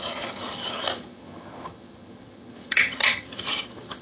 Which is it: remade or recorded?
remade